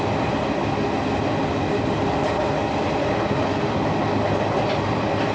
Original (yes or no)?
yes